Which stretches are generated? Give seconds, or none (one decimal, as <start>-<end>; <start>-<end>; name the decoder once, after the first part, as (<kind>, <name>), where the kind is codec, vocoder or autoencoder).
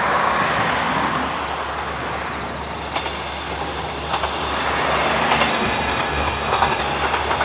5.5-6.8 (codec, DAC)